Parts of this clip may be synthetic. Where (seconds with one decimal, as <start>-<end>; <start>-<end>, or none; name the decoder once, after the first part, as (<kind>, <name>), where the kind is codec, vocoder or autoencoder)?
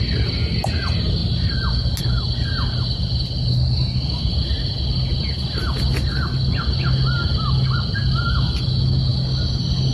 none